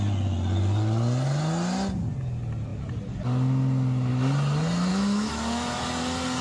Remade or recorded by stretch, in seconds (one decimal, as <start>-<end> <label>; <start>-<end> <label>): 0.0-4.9 recorded; 4.9-5.8 remade; 5.8-6.4 recorded